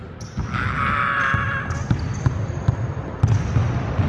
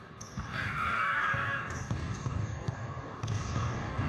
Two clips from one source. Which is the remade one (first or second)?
second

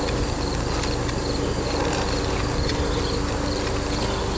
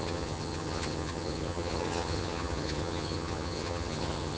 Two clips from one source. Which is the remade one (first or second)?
second